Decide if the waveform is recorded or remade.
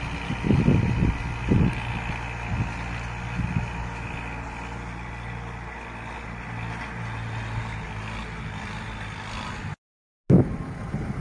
recorded